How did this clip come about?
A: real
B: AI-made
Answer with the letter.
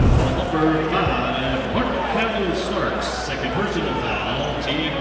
A